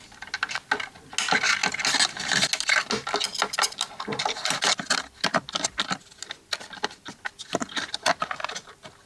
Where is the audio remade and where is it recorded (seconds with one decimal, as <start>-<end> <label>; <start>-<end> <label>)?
0.0-9.1 recorded